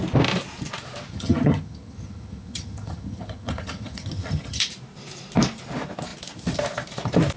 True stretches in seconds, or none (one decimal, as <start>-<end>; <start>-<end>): 0.0-1.1; 4.6-7.4